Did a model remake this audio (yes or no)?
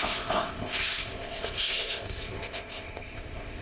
yes